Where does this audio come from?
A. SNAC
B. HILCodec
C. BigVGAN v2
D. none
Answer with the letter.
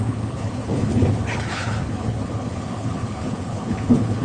B